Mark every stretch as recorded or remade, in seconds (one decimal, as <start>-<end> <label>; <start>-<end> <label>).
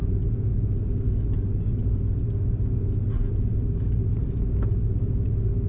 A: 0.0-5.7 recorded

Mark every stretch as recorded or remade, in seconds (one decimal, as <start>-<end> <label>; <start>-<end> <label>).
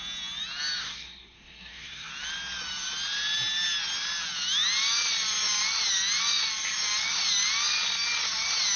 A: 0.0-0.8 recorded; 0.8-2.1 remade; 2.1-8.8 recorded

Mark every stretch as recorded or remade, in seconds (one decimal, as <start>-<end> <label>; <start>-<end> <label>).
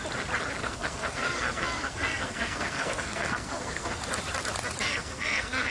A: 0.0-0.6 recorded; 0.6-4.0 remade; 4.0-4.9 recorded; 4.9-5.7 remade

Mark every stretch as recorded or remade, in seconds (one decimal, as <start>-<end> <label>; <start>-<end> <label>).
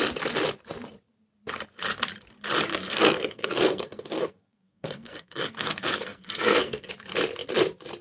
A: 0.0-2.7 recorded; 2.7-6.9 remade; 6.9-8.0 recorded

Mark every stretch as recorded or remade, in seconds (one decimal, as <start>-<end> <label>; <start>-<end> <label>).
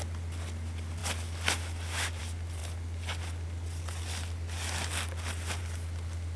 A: 0.0-6.4 recorded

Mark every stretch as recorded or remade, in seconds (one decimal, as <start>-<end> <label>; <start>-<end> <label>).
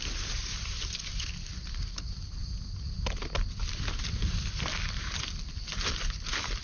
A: 0.0-6.6 recorded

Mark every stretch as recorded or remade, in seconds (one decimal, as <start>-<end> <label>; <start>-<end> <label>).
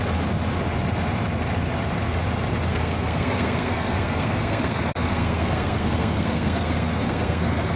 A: 0.0-2.7 recorded; 2.7-7.8 remade